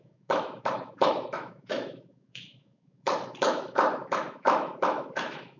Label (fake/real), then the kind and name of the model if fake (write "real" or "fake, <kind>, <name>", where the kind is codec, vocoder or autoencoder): fake, autoencoder, DAC-VAE